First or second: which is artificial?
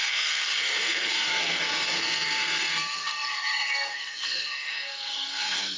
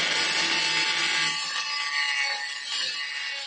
first